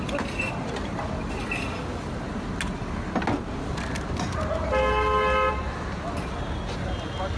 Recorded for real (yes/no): yes